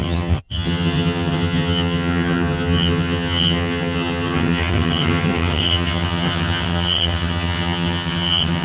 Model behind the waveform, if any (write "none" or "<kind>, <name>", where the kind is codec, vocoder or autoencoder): vocoder, HiFi-GAN